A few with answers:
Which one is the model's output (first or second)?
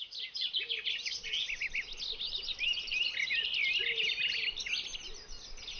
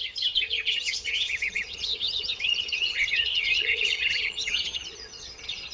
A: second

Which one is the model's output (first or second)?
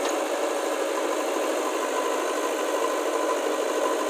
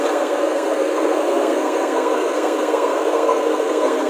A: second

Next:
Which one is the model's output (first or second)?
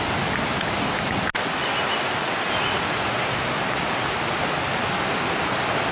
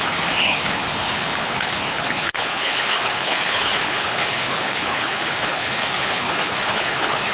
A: second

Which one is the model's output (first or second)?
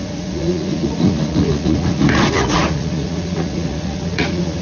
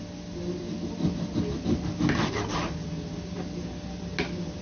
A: first